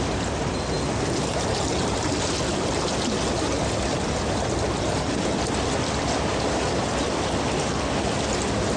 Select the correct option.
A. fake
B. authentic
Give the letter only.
B